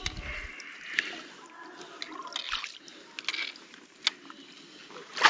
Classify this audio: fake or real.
real